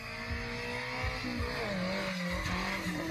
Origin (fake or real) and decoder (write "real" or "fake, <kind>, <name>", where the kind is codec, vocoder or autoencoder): real